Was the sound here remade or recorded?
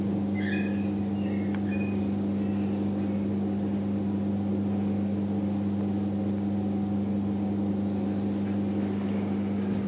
recorded